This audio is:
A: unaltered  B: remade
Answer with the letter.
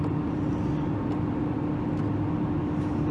A